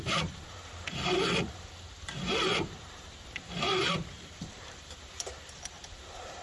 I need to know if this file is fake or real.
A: fake